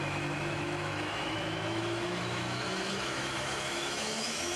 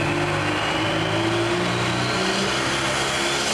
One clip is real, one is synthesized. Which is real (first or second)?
second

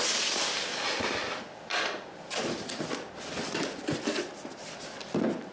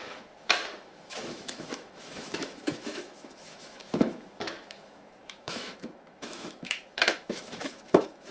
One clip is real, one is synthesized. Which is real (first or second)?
first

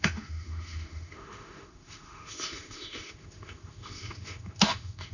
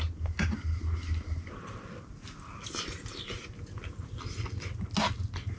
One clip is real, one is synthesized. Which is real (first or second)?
second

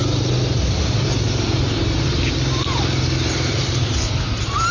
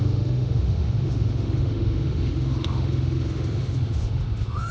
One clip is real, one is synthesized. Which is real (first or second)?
first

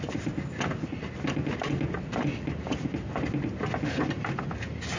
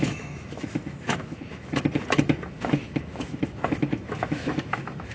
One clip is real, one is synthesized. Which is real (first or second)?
first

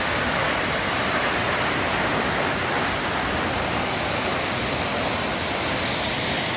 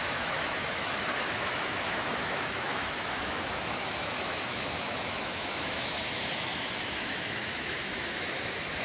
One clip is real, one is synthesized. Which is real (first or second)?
first